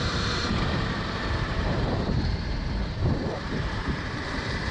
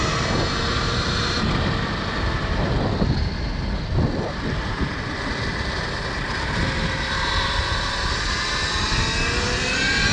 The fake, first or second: first